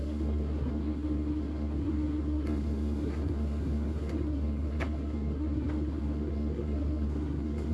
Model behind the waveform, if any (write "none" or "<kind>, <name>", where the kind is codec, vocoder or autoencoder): codec, SNAC